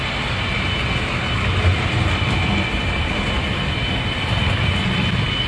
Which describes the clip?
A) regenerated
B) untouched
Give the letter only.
B